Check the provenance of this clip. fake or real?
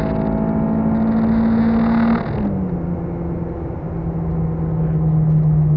real